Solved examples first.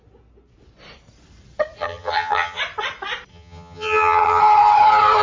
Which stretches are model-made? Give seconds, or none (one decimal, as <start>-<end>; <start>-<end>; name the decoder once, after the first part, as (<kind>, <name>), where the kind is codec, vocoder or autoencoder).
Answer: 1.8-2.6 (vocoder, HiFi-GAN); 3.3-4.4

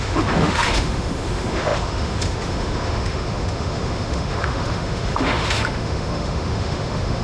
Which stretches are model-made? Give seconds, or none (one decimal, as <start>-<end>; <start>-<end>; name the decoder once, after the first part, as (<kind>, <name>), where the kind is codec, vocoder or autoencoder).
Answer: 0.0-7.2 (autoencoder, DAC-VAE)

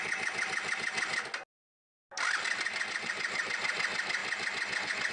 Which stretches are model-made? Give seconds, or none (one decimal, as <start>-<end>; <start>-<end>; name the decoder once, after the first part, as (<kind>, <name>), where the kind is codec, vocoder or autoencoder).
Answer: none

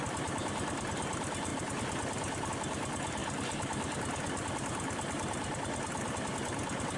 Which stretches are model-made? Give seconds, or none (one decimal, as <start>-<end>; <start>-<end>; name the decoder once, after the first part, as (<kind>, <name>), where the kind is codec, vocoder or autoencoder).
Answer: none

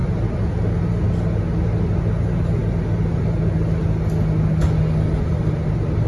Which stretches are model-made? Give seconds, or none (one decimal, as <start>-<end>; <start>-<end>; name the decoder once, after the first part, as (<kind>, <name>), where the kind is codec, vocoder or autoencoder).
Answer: none